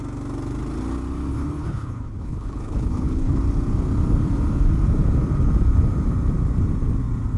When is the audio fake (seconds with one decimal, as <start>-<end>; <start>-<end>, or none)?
1.3-3.4

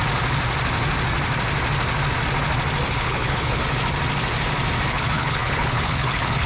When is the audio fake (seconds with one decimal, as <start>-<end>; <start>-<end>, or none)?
2.9-3.6; 4.9-6.5

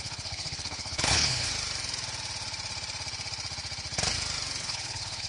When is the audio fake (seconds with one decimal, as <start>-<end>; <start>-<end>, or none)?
0.0-1.5; 4.6-5.3

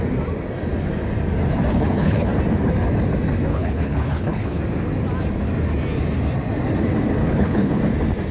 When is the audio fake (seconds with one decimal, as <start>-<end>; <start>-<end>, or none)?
1.7-2.3; 3.5-4.6; 7.2-7.8

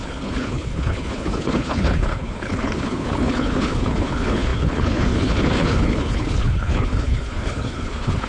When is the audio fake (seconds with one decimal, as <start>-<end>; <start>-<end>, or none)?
0.0-8.3